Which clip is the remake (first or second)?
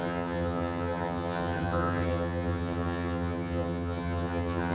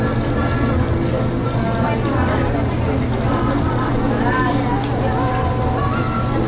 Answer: first